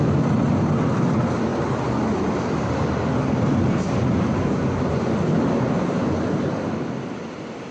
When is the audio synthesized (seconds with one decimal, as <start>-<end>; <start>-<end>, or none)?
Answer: none